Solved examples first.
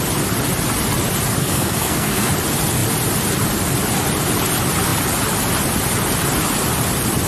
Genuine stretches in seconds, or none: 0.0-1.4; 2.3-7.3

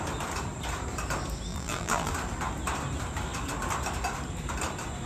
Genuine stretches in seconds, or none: 0.0-1.5; 2.1-5.1